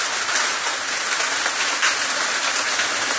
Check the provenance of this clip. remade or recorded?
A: recorded